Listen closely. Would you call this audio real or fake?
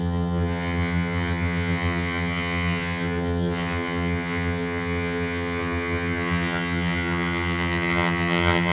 fake